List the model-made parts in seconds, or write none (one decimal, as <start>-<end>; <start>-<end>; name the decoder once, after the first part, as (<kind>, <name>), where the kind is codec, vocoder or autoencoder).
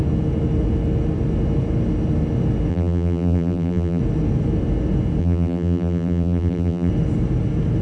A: 2.7-4.0 (vocoder, BigVGAN v2); 5.2-6.9